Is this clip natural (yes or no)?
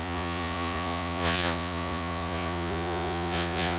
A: no